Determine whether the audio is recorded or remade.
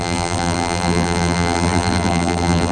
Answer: remade